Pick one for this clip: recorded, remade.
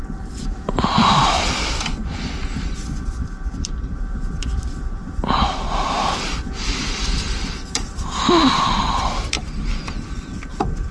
remade